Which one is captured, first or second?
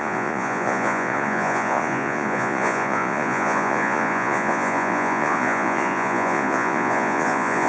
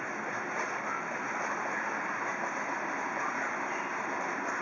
second